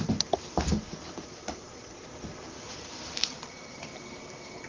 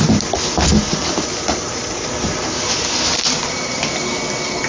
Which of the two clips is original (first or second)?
second